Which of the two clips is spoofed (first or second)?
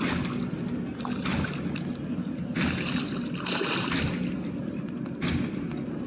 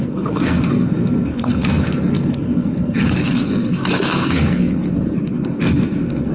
second